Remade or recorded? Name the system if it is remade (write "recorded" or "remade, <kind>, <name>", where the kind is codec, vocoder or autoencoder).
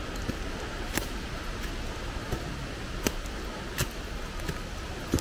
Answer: recorded